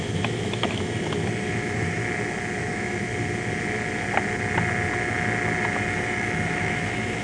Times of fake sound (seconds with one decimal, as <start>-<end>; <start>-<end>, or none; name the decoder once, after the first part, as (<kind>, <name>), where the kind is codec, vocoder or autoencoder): 0.0-2.0 (autoencoder, DAC-VAE); 2.6-3.1; 5.9-7.2